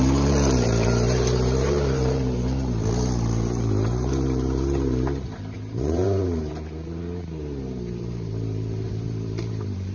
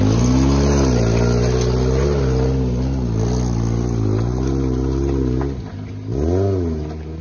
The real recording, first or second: second